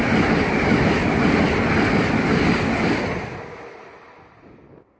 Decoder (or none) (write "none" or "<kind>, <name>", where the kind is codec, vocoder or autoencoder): none